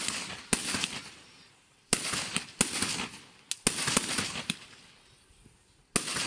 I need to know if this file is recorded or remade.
recorded